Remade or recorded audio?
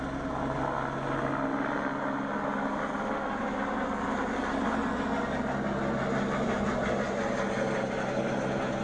recorded